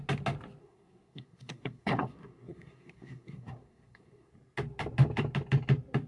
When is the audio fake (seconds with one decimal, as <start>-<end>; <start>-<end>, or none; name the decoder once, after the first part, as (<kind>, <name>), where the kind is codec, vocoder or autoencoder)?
0.6-4.3 (codec, SNAC)